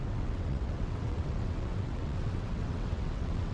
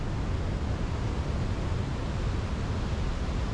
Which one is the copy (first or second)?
first